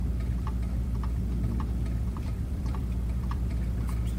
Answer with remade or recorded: remade